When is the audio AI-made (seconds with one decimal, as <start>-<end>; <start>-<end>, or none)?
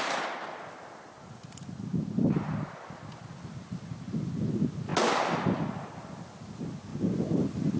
none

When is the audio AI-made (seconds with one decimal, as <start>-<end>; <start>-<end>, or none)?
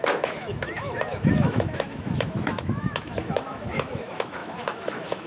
0.0-5.3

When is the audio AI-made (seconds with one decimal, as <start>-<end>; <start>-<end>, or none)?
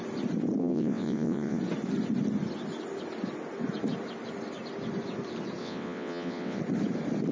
0.6-1.6; 5.6-6.6